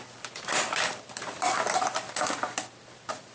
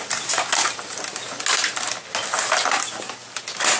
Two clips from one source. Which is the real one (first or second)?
second